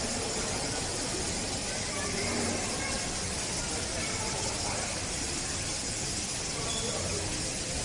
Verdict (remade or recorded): recorded